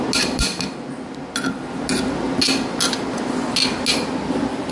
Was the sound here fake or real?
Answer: real